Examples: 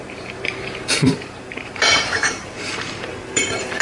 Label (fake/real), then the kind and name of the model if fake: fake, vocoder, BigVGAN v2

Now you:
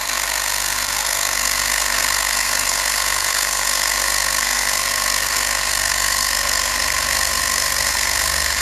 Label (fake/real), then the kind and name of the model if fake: fake, codec, SNAC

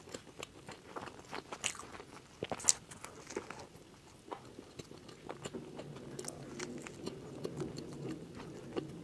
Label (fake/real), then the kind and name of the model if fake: real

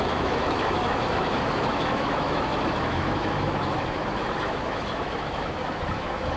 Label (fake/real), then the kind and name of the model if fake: fake, autoencoder, DAC-VAE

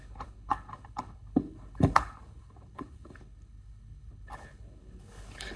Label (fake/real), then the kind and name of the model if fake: fake, codec, HILCodec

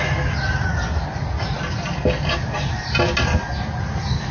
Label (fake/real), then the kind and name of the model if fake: real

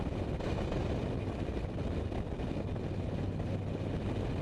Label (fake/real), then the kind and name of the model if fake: real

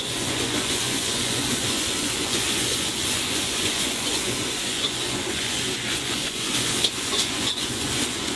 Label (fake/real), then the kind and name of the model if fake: fake, vocoder, Vocos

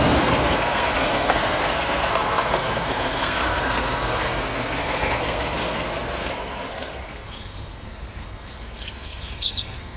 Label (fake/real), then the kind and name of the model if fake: fake, codec, SNAC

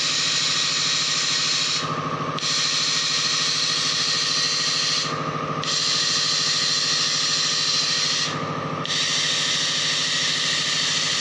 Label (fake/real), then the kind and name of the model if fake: real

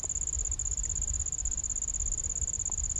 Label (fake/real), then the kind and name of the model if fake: real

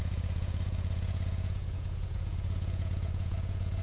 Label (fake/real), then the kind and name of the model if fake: fake, vocoder, Vocos